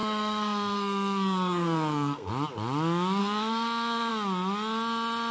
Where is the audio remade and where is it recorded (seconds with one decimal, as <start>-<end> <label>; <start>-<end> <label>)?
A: 0.0-2.3 remade; 2.3-3.2 recorded; 3.2-4.1 remade; 4.1-5.3 recorded